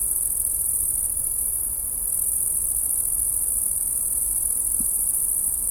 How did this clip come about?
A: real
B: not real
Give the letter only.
A